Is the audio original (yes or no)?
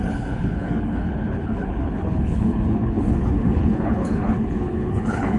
no